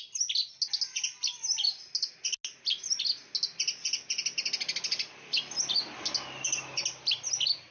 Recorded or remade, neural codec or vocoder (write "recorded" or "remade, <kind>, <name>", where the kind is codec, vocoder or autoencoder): recorded